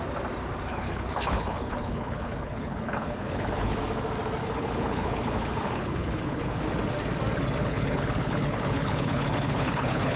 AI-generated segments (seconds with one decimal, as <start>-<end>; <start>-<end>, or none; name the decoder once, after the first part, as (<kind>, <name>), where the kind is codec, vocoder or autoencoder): 0.7-3.8 (codec, HILCodec); 4.4-6.6; 7.6-10.2